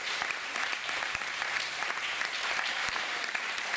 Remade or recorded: remade